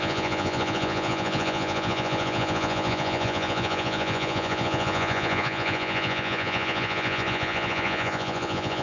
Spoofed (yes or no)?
yes